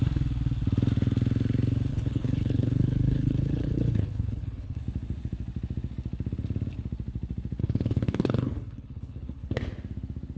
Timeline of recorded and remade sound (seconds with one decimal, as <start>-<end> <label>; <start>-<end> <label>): 0.0-1.9 recorded; 1.9-4.8 remade; 4.8-7.6 recorded; 7.6-9.6 remade; 9.6-10.4 recorded